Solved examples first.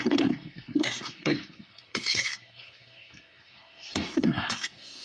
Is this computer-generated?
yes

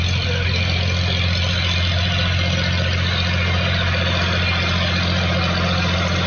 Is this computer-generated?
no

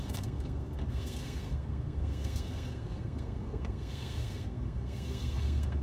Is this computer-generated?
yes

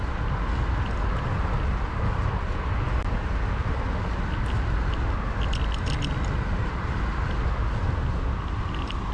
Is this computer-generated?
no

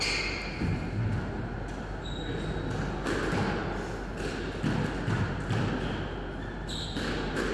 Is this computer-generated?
no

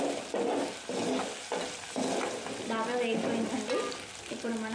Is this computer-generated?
no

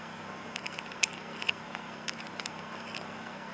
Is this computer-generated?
yes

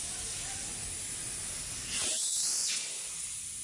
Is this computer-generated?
no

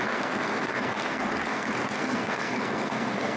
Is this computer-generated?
yes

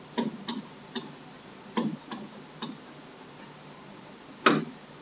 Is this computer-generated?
no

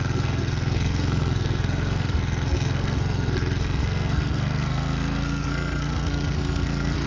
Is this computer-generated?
yes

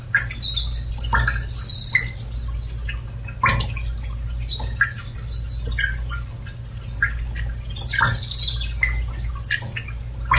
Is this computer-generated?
no